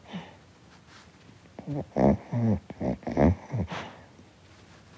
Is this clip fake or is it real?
real